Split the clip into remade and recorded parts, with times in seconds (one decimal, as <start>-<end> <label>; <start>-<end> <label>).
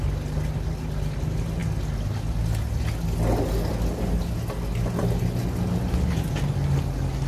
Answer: 0.0-7.3 recorded